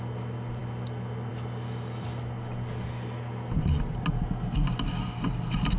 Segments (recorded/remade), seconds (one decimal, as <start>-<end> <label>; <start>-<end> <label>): 0.0-5.8 recorded